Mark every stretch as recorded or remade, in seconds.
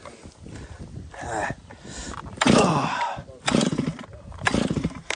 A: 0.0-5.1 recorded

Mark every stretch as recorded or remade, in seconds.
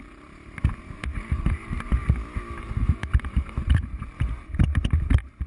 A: 0.0-2.0 remade; 2.0-2.6 recorded; 2.6-5.5 remade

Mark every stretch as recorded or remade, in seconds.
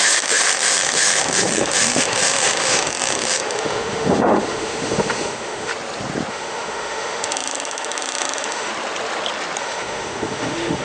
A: 0.0-5.7 remade; 5.7-6.3 recorded; 6.3-8.7 remade; 8.7-9.6 recorded; 9.6-10.8 remade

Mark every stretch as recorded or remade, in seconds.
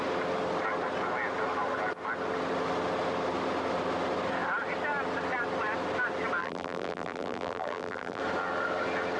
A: 0.0-6.4 recorded; 6.4-8.2 remade; 8.2-9.2 recorded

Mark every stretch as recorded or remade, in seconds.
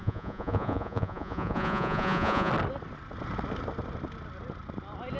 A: 0.0-2.5 remade; 2.5-5.2 recorded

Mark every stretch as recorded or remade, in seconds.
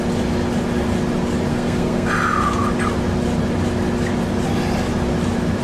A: 0.0-1.5 recorded; 1.5-2.1 remade; 2.1-5.6 recorded